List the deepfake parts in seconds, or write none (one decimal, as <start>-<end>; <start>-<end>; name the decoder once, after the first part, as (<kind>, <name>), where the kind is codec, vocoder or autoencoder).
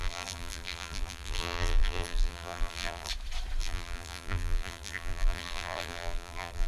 0.0-3.1 (vocoder, BigVGAN v2); 3.6-6.7